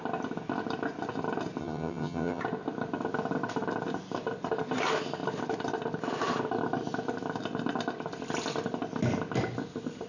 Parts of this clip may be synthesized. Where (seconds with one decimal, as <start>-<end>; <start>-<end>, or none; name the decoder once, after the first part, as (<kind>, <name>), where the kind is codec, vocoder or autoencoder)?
1.6-2.4 (vocoder, HiFi-GAN)